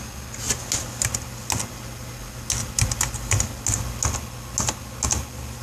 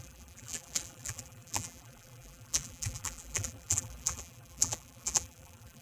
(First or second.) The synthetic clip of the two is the second